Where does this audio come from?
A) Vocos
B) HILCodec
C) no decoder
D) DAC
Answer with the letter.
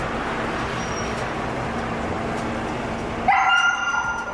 C